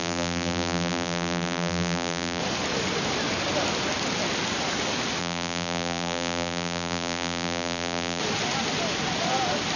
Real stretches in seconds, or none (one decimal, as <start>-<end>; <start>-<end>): 2.4-5.2; 8.2-9.8